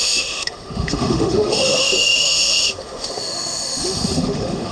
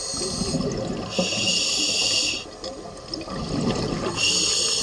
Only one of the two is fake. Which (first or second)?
first